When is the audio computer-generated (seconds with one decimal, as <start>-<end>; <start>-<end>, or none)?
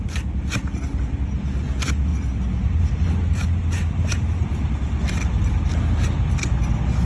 none